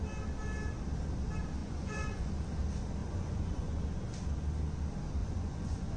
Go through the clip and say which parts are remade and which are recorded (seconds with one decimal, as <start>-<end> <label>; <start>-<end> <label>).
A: 0.0-1.6 recorded; 1.6-2.3 remade; 2.3-3.0 recorded; 3.0-3.8 remade; 3.8-5.2 recorded; 5.2-6.0 remade